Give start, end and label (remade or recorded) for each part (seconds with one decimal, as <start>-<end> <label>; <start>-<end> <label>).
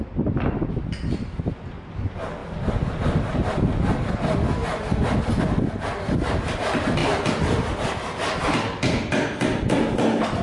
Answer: 0.0-10.4 recorded